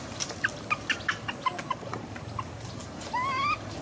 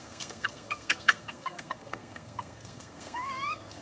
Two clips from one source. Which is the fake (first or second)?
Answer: second